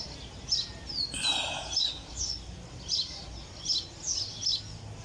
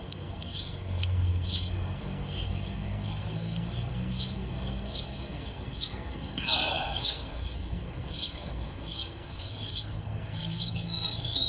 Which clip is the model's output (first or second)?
second